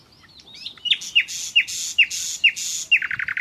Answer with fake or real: real